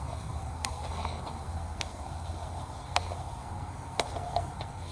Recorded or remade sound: remade